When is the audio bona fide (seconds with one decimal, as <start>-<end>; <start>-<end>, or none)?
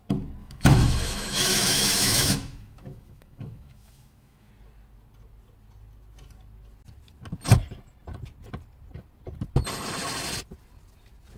0.0-0.4; 4.5-11.4